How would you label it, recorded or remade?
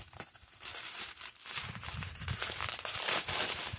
remade